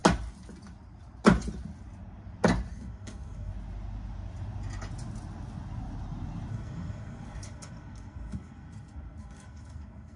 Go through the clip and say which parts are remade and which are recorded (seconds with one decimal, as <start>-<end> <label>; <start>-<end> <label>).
0.0-2.7 recorded; 2.7-3.5 remade; 3.5-6.5 recorded; 6.5-10.2 remade